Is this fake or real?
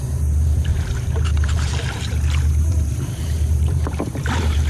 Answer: fake